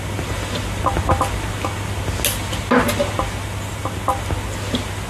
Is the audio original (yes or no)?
yes